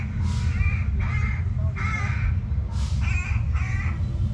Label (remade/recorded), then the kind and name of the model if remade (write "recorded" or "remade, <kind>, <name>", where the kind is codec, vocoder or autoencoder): recorded